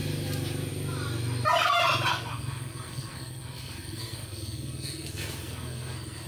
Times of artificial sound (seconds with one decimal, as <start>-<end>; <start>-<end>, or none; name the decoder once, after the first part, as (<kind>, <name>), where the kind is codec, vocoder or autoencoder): 2.1-6.3 (codec, SNAC)